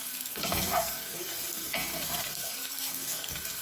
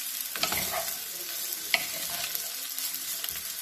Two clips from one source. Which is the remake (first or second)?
first